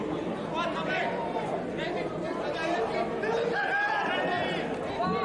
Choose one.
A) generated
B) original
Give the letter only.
A